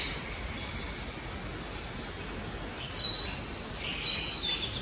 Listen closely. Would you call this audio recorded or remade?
recorded